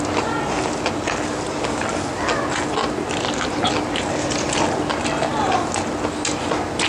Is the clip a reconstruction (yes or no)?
no